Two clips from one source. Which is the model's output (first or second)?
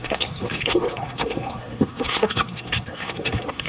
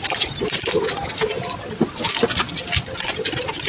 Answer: first